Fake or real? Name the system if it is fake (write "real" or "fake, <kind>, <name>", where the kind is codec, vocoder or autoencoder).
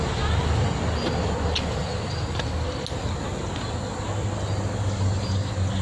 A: real